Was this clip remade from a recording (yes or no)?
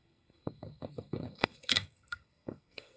yes